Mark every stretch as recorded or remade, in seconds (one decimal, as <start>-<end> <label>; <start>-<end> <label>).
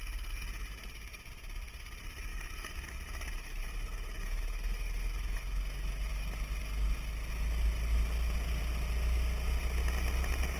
0.0-2.3 recorded; 2.3-6.1 remade; 6.1-10.6 recorded